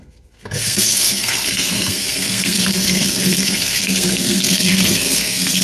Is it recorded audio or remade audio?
remade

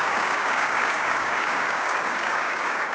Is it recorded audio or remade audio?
remade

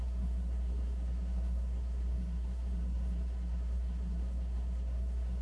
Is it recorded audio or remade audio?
remade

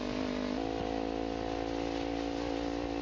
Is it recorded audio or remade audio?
recorded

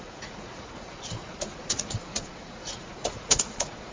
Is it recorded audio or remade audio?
remade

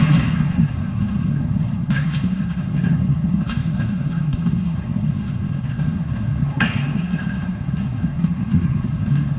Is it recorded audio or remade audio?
remade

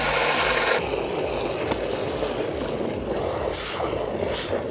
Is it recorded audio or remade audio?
recorded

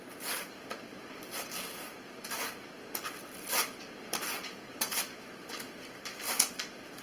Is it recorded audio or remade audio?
recorded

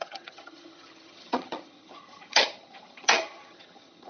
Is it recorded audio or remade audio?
remade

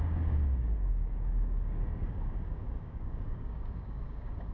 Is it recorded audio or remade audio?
remade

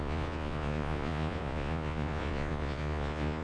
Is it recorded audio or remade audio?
remade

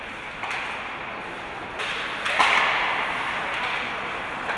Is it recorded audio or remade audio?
recorded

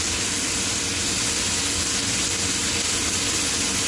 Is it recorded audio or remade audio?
recorded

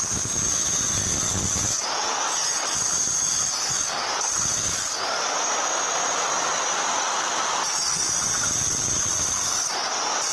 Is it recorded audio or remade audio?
recorded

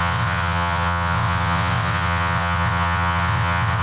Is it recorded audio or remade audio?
remade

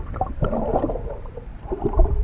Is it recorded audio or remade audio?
recorded